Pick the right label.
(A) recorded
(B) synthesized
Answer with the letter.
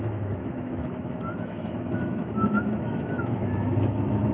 B